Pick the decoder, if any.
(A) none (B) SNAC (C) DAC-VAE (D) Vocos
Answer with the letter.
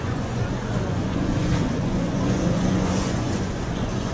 D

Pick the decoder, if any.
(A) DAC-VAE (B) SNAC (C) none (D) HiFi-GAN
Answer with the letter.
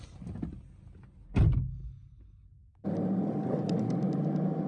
C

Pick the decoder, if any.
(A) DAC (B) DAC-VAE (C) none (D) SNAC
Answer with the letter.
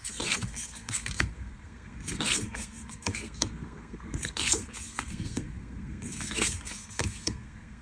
D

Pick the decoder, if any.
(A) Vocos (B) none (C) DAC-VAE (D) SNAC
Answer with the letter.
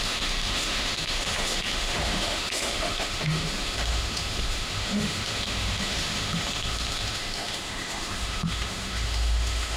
C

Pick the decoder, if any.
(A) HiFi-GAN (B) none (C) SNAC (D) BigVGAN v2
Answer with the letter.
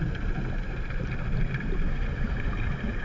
B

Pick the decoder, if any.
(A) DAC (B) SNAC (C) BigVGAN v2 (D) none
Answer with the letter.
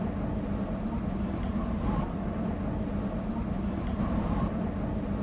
D